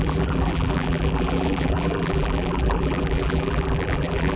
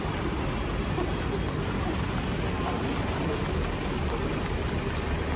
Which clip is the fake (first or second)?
first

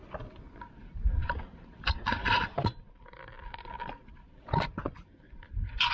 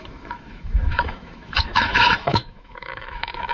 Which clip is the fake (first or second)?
second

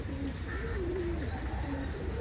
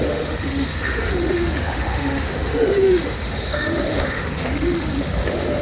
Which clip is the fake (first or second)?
second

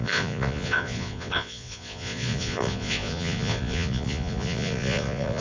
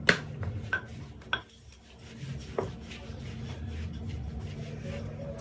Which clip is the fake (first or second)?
first